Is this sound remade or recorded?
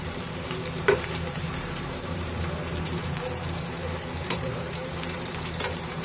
remade